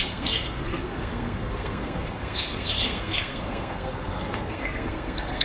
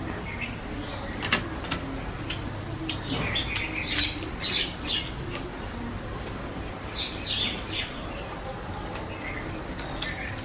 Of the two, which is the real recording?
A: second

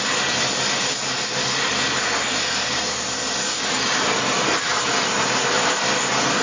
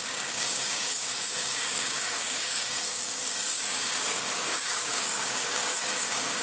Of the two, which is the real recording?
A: first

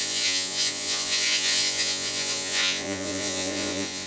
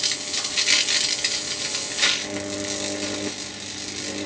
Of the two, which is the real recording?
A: second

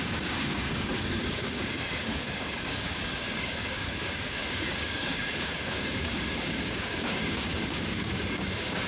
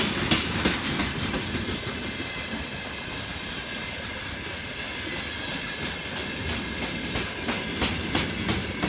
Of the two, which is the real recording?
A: second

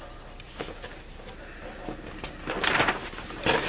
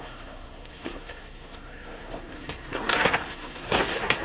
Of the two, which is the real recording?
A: first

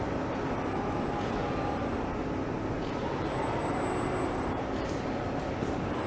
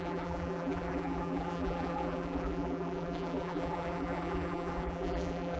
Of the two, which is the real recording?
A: first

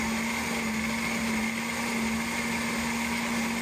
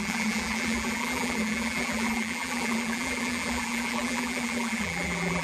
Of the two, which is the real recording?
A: first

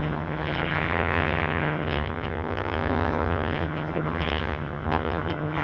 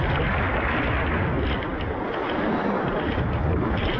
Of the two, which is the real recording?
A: second